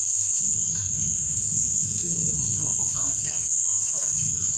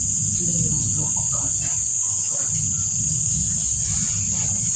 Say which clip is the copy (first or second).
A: first